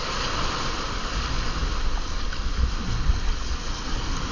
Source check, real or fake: real